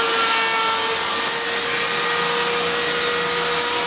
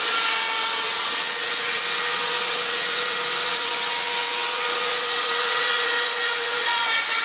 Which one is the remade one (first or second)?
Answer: second